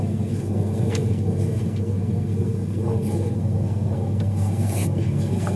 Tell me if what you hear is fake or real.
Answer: fake